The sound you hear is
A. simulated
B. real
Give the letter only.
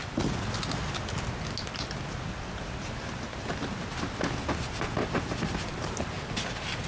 B